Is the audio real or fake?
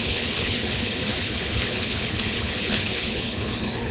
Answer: fake